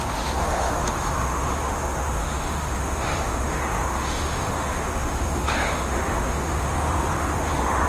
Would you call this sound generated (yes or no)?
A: yes